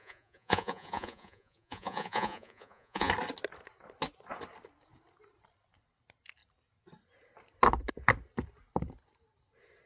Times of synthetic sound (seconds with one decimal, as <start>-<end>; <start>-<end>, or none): 0.0-3.1